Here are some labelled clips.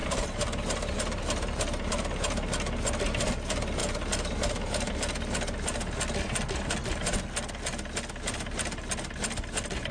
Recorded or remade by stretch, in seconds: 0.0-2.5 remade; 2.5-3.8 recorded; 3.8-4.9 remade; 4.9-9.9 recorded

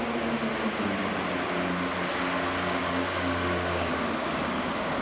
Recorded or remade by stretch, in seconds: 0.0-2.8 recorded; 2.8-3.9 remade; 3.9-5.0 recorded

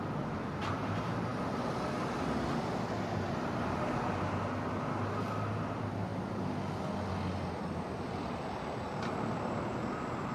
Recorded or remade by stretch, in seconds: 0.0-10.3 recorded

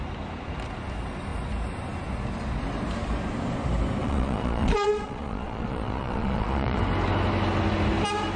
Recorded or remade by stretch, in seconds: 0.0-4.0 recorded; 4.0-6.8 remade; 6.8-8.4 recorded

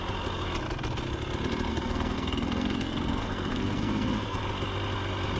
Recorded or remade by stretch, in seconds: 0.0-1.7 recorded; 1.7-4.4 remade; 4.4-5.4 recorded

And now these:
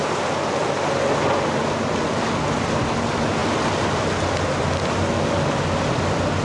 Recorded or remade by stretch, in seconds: 0.0-6.4 recorded

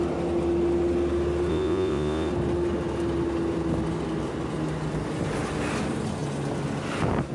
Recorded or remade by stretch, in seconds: 0.0-1.5 recorded; 1.5-2.3 remade; 2.3-7.3 recorded

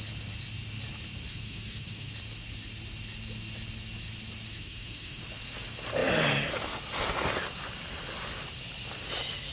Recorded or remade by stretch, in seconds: 0.0-1.3 recorded; 1.3-2.1 remade; 2.1-4.5 recorded; 4.5-5.2 remade; 5.2-9.5 recorded